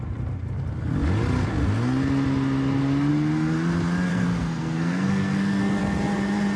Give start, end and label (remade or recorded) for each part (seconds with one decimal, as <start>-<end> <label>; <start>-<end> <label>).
0.0-4.1 recorded; 4.1-5.8 remade; 5.8-6.6 recorded